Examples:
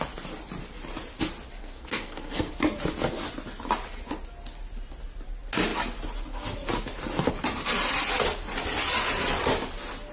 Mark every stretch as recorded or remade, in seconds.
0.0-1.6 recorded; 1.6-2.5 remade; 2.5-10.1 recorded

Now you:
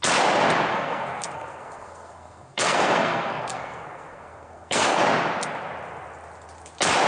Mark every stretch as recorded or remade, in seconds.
0.0-0.7 recorded; 0.7-5.0 remade; 5.0-7.1 recorded

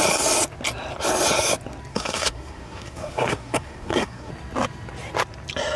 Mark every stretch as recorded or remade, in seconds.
0.0-1.9 recorded; 1.9-4.3 remade; 4.3-5.8 recorded

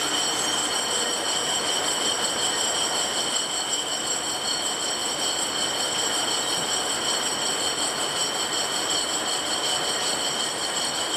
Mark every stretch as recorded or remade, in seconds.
0.0-11.2 recorded

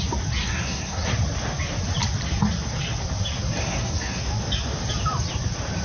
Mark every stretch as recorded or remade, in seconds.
0.0-0.4 recorded; 0.4-1.1 remade; 1.1-3.6 recorded; 3.6-4.2 remade; 4.2-5.8 recorded

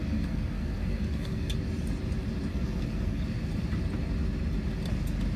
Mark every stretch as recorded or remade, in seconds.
0.0-1.5 remade; 1.5-2.5 recorded; 2.5-3.2 remade; 3.2-5.4 recorded

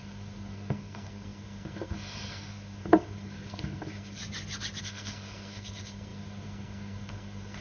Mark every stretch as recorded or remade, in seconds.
0.0-4.2 remade; 4.2-4.8 recorded; 4.8-7.6 remade

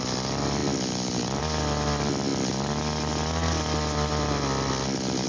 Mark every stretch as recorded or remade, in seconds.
0.0-5.3 recorded